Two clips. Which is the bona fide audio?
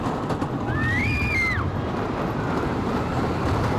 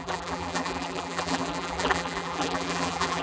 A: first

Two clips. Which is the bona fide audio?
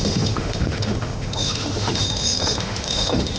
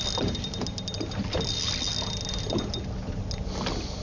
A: second